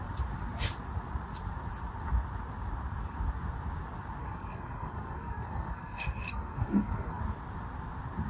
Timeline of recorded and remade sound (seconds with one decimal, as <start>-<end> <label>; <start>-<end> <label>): 0.0-4.2 recorded; 4.2-7.2 remade; 7.2-8.3 recorded